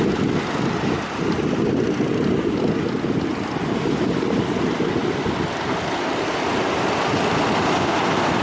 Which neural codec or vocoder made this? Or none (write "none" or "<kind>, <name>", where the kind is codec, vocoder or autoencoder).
none